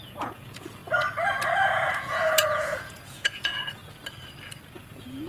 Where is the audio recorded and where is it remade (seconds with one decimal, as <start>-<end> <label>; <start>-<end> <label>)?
0.0-0.8 remade; 0.8-1.9 recorded; 1.9-3.8 remade; 3.8-4.8 recorded; 4.8-5.3 remade